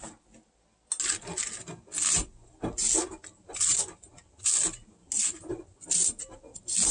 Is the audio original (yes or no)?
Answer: yes